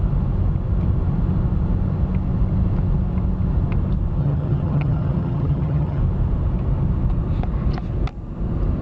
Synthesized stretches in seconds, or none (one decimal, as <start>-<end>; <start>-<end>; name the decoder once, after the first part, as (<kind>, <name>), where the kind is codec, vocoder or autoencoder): 4.2-6.0 (vocoder, HiFi-GAN)